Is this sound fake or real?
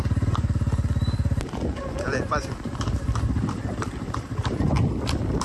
fake